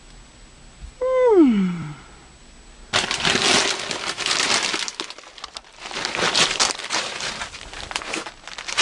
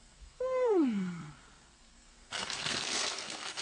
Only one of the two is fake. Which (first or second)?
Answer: second